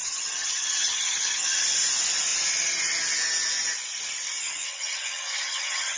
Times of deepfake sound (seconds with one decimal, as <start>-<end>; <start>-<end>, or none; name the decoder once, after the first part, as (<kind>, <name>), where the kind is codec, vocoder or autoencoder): 0.0-1.6 (vocoder, HiFi-GAN); 4.4-6.0